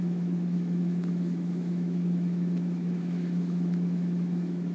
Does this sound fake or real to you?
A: fake